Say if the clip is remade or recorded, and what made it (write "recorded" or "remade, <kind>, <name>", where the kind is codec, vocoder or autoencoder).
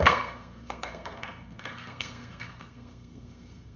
remade, codec, SNAC